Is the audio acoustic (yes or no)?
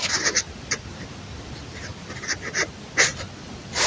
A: yes